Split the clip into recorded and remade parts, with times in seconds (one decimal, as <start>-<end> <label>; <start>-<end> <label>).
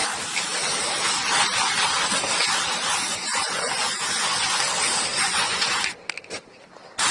0.0-3.1 recorded; 3.1-4.5 remade; 4.5-5.1 recorded; 5.1-5.8 remade; 5.8-7.1 recorded